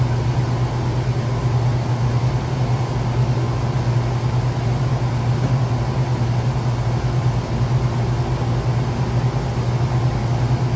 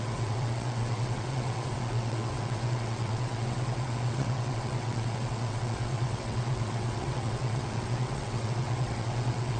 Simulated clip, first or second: second